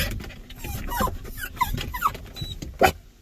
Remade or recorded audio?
recorded